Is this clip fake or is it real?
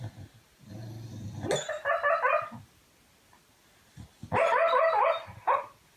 real